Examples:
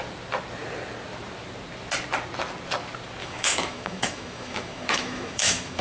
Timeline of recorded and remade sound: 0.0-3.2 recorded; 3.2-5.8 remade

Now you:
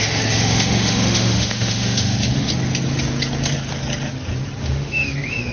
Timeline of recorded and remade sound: 0.0-2.5 remade; 2.5-4.6 recorded; 4.6-5.5 remade

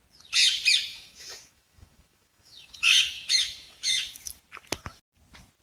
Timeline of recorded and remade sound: 0.0-0.9 recorded; 0.9-4.3 remade; 4.3-5.6 recorded

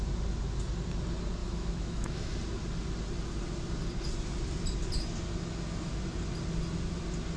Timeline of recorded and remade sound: 0.0-1.4 recorded; 1.4-2.3 remade; 2.3-7.4 recorded

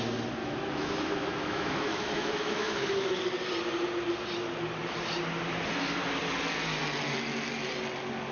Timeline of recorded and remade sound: 0.0-0.4 recorded; 0.4-3.2 remade; 3.2-8.3 recorded

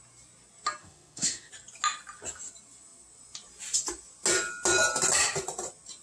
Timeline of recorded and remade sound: 0.0-0.8 recorded; 0.8-1.5 remade; 1.5-6.0 recorded

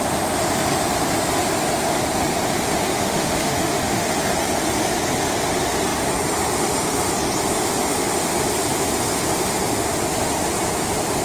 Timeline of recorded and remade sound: 0.0-2.9 recorded; 2.9-4.1 remade; 4.1-11.2 recorded

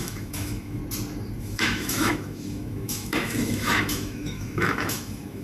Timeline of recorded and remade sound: 0.0-0.8 remade; 0.8-1.4 recorded; 1.4-5.4 remade